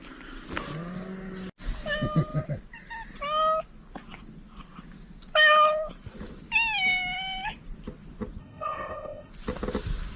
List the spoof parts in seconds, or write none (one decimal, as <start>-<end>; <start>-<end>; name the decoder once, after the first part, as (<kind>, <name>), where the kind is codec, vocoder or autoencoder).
8.4-9.3 (codec, ZipCodec)